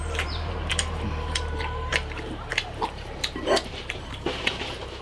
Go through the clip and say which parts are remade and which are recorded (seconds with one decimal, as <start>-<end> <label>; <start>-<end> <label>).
0.0-5.0 remade

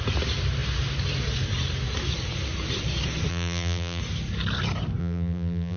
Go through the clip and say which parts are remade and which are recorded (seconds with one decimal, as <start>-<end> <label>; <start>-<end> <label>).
0.0-3.3 recorded; 3.3-4.0 remade; 4.0-5.0 recorded; 5.0-5.8 remade

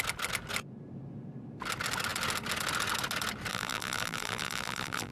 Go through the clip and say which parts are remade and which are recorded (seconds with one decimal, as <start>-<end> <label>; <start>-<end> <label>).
0.0-3.5 recorded; 3.5-5.1 remade

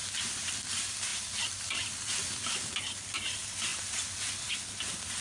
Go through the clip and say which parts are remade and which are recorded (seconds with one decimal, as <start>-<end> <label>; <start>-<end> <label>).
0.0-0.5 remade; 0.5-1.1 recorded; 1.1-2.7 remade; 2.7-5.2 recorded

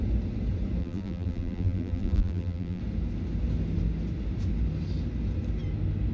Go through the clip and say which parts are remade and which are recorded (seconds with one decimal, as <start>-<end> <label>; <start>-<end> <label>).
0.0-0.8 recorded; 0.8-2.8 remade; 2.8-6.1 recorded

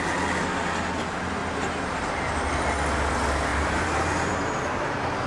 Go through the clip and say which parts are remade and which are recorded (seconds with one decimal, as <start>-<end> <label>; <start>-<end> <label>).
0.0-1.4 recorded; 1.4-2.3 remade; 2.3-3.5 recorded; 3.5-4.6 remade; 4.6-5.3 recorded

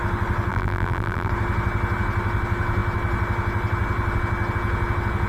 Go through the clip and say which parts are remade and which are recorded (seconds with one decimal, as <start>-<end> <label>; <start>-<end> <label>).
0.0-0.5 recorded; 0.5-1.3 remade; 1.3-5.3 recorded